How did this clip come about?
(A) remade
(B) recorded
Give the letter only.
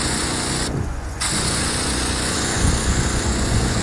A